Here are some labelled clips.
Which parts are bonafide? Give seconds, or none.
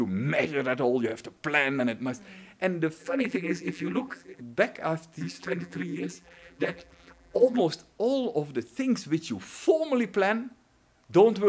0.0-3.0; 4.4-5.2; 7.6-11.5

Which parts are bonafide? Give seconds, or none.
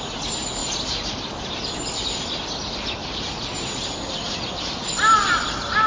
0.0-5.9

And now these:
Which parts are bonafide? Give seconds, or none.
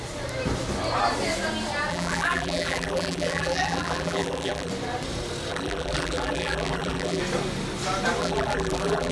0.0-1.9; 4.7-5.5; 7.2-8.2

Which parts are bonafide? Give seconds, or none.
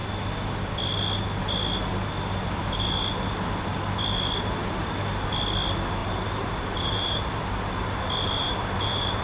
0.0-6.0; 7.7-8.4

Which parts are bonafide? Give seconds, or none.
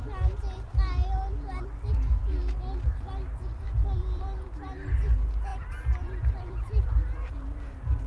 2.4-3.6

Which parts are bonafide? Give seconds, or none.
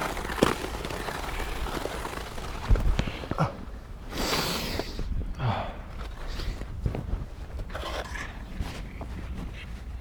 0.0-2.5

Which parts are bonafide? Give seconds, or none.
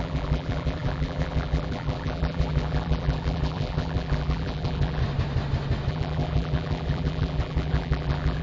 5.0-5.9